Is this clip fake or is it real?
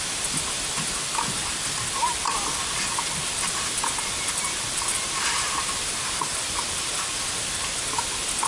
real